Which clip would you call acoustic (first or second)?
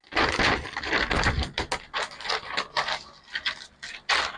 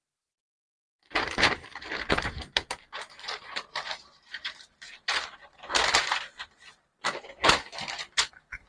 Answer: first